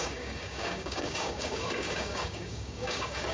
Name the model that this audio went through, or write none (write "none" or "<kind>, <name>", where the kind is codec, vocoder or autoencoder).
codec, DAC